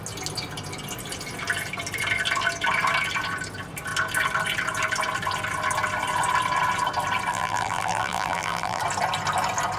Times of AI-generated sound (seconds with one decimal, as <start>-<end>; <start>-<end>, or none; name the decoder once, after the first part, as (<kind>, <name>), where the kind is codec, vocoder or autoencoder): 7.3-8.8 (vocoder, BigVGAN v2)